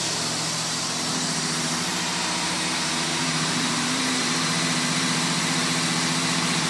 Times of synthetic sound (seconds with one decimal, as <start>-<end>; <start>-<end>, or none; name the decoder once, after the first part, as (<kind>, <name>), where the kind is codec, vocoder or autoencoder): 1.1-2.6 (vocoder, BigVGAN v2); 3.2-6.7